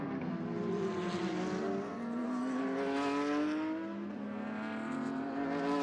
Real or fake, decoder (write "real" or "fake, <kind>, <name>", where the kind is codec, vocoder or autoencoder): real